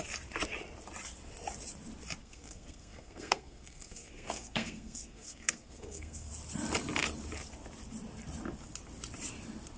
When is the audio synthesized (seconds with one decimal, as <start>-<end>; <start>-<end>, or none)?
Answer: 2.2-6.3